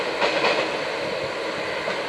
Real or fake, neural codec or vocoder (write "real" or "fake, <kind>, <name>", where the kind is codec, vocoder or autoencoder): real